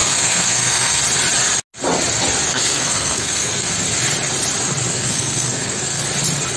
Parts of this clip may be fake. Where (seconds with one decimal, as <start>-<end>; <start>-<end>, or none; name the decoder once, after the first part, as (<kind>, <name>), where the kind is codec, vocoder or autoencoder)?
0.0-1.0 (codec, SNAC); 2.5-3.7; 4.9-6.0